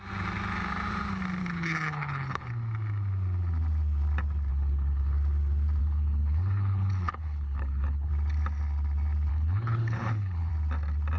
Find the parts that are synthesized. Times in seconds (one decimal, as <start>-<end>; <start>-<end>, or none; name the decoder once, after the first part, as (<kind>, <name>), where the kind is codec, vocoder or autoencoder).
1.4-2.5 (codec, HILCodec); 4.5-5.1; 5.8-8.1; 9.3-10.5